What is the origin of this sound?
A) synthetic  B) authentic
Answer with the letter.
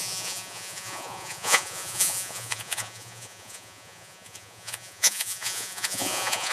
A